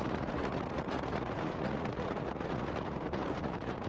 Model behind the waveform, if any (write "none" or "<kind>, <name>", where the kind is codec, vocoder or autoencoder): vocoder, Vocos